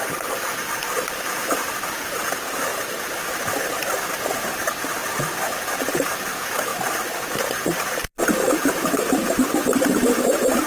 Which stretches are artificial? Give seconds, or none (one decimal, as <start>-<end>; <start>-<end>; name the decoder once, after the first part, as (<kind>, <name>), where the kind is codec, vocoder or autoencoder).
0.0-5.0 (vocoder, BigVGAN v2); 5.8-10.7